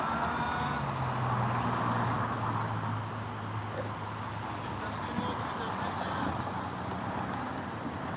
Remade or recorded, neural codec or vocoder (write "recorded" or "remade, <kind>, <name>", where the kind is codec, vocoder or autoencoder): recorded